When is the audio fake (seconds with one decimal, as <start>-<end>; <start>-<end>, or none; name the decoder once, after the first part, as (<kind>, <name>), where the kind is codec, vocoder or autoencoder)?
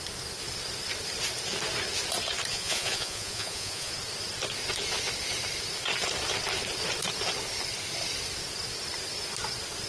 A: 2.5-3.9 (vocoder, Vocos)